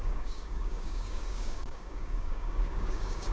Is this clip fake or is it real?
fake